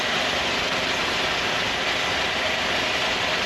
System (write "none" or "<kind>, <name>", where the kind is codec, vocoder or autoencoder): none